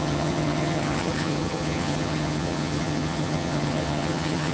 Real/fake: fake